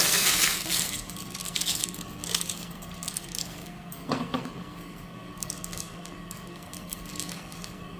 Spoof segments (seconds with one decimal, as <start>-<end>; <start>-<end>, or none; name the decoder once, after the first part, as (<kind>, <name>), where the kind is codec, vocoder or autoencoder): 0.0-8.0 (codec, SNAC)